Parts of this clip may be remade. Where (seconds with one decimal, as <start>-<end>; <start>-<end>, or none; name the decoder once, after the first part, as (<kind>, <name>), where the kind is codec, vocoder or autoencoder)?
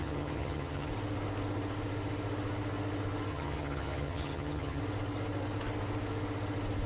0.0-0.9 (vocoder, HiFi-GAN); 3.3-4.8